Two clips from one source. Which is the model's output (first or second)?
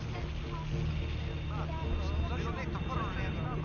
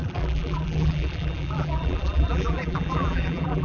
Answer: second